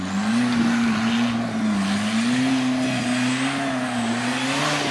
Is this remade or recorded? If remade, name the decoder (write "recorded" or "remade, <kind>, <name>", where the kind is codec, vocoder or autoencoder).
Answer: recorded